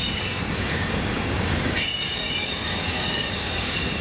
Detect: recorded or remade remade